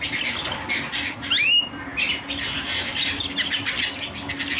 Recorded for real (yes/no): yes